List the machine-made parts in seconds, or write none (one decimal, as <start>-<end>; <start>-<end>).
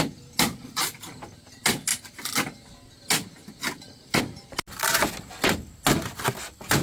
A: none